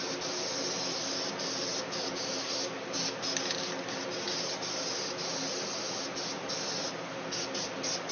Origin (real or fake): real